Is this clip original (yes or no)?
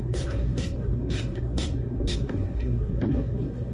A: no